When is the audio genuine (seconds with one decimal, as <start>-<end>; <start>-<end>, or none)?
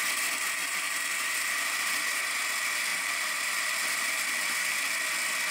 0.0-0.6; 2.2-2.9; 4.9-5.5